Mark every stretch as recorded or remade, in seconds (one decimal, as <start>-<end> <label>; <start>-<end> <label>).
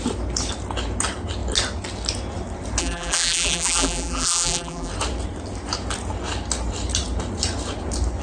0.0-2.8 recorded; 2.8-4.9 remade; 4.9-8.2 recorded